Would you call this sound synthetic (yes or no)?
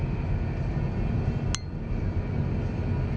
no